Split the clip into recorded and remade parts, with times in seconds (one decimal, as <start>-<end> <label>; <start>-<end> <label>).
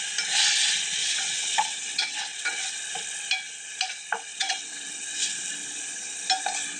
0.0-1.0 recorded; 1.0-2.7 remade; 2.7-4.3 recorded; 4.3-5.4 remade; 5.4-6.8 recorded